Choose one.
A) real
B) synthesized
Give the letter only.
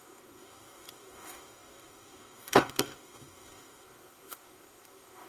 B